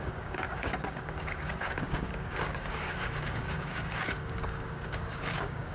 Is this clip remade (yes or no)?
yes